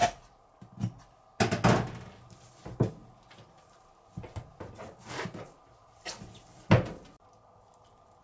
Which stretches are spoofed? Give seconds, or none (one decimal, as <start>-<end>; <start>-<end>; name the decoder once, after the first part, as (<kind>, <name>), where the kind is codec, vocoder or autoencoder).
none